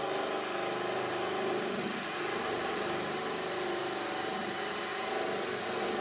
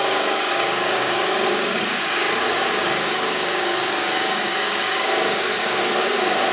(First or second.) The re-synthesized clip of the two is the second